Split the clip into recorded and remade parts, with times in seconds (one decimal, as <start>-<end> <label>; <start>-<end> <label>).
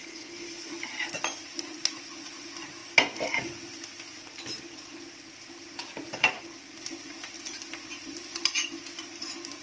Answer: 0.0-0.7 remade; 0.7-9.6 recorded